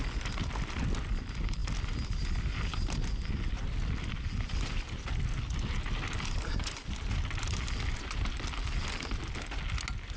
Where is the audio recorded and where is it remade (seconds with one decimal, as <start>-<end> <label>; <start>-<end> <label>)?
0.0-10.2 recorded